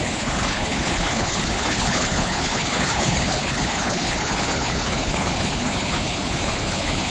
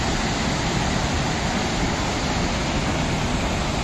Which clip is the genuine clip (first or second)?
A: second